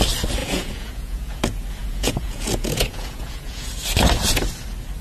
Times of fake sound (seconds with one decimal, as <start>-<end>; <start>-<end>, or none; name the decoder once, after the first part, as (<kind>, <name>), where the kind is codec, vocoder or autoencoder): 0.4-1.4 (vocoder, Vocos); 1.8-3.7